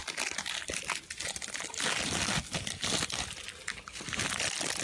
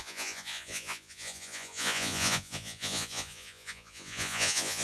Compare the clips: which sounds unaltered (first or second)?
first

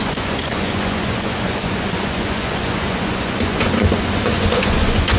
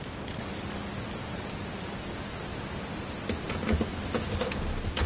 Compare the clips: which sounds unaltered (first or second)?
second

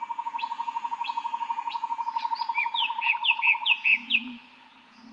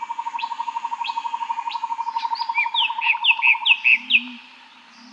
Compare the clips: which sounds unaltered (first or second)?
second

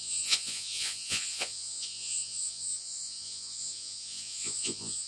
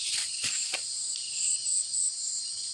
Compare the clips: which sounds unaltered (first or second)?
second